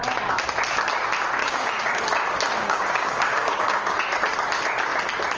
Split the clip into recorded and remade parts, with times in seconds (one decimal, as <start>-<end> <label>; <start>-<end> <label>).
0.0-1.4 recorded; 1.4-2.0 remade; 2.0-2.6 recorded; 2.6-4.0 remade; 4.0-5.4 recorded